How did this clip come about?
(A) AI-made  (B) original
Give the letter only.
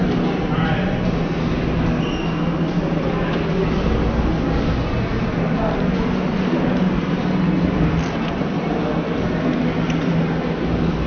B